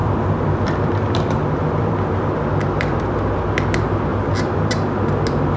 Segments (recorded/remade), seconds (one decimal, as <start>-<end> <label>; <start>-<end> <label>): 0.0-3.4 remade; 3.4-4.1 recorded; 4.1-4.7 remade; 4.7-5.6 recorded